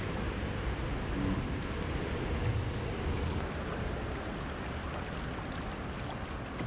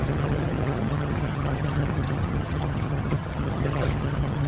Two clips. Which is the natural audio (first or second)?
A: first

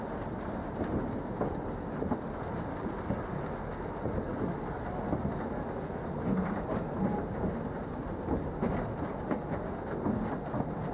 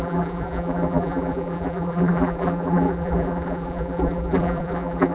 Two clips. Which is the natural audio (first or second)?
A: first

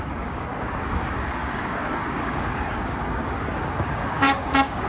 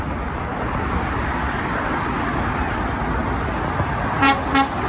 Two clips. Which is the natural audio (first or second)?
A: second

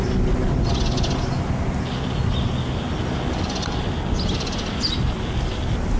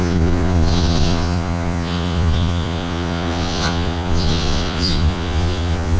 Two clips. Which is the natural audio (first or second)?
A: first